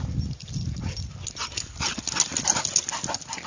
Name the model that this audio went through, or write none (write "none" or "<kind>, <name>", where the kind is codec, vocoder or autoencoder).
none